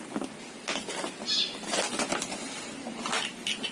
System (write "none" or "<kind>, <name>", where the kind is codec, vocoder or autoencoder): none